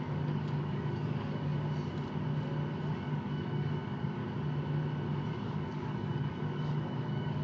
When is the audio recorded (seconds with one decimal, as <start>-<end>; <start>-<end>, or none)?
1.5-2.9; 4.2-5.3